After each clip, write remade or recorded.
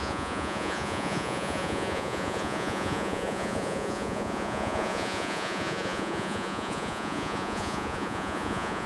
remade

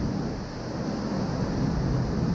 recorded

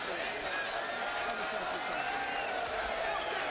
recorded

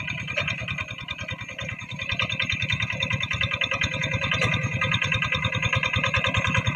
recorded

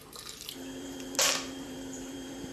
remade